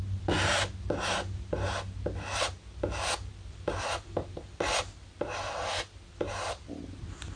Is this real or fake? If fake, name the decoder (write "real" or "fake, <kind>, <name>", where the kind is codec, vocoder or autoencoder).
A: real